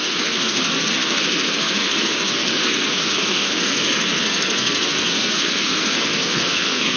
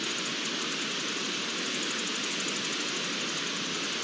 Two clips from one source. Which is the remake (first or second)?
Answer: first